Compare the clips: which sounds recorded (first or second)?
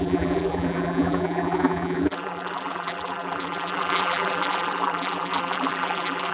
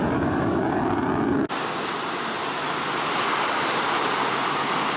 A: second